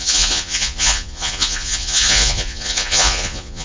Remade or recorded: remade